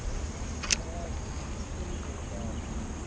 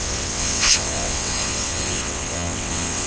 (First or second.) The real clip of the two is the first